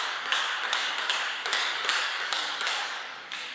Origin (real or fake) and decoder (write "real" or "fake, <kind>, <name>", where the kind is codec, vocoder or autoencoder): fake, codec, DAC